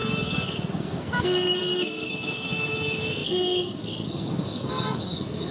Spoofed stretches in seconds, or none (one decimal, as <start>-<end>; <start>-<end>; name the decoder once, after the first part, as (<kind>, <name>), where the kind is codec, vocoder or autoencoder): 0.0-5.5 (codec, SNAC)